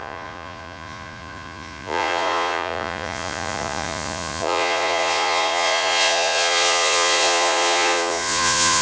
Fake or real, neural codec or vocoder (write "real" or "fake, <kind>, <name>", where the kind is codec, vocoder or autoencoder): fake, vocoder, Vocos